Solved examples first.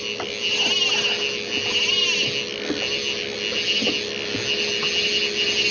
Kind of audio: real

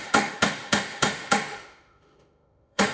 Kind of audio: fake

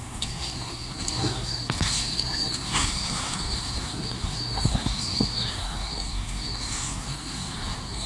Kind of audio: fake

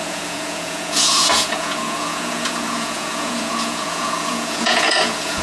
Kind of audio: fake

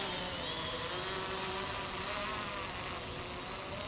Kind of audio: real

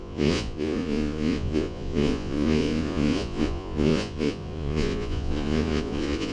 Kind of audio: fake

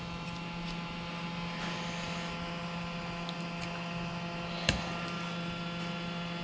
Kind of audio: real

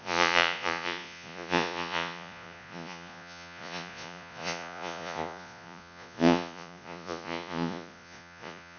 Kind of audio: fake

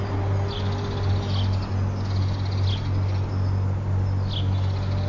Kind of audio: real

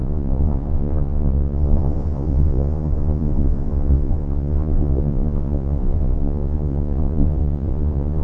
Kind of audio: fake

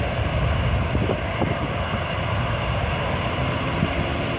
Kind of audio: real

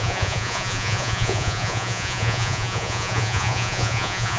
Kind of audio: fake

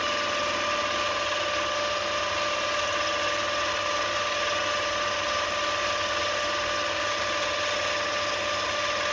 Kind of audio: real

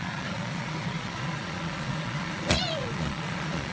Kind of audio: fake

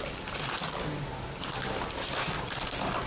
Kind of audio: real